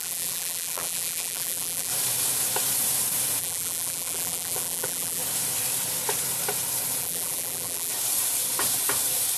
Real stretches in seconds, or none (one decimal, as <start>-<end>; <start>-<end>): 1.9-3.4; 5.2-7.0; 7.9-9.4